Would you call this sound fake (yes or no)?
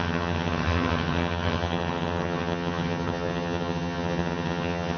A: yes